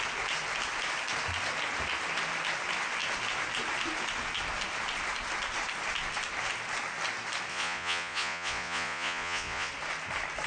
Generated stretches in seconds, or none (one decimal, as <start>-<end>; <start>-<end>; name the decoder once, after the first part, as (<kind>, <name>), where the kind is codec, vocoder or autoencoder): 7.5-9.7 (vocoder, Vocos)